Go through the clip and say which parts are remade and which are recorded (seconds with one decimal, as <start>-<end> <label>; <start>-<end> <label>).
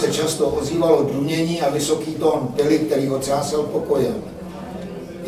0.0-0.6 remade; 0.6-1.1 recorded; 1.1-4.2 remade; 4.2-5.3 recorded